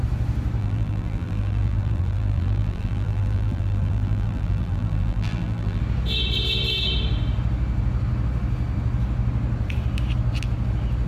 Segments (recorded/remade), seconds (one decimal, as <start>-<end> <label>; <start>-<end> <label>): 0.0-0.6 recorded; 0.6-5.8 remade; 5.8-11.1 recorded